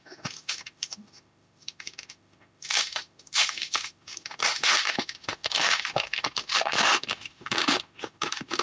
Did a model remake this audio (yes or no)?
yes